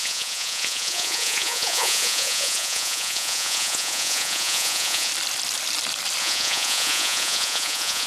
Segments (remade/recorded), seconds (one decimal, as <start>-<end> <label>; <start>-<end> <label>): 0.0-5.1 remade; 5.1-6.2 recorded; 6.2-8.1 remade

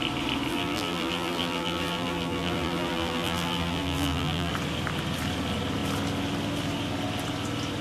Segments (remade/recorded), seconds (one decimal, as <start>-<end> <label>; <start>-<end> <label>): 0.0-0.5 recorded; 0.5-4.5 remade; 4.5-7.8 recorded

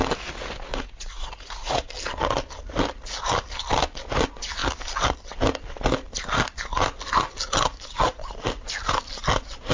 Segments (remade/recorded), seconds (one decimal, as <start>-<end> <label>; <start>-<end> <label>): 0.0-0.7 recorded; 0.7-1.9 remade; 1.9-9.7 recorded

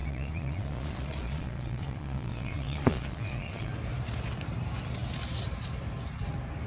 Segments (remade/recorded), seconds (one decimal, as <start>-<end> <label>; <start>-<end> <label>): 0.0-3.7 remade; 3.7-6.7 recorded

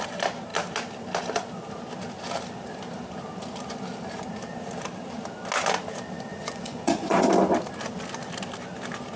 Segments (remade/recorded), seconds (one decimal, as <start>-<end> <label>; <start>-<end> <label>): 0.0-6.3 recorded; 6.3-7.3 remade; 7.3-9.2 recorded